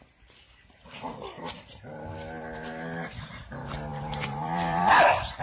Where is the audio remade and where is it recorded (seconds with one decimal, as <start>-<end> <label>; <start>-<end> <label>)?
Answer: 0.0-3.9 recorded; 3.9-5.4 remade